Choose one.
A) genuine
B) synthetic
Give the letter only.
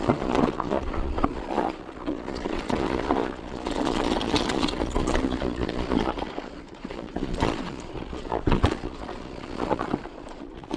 B